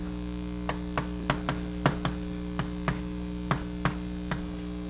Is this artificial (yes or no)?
no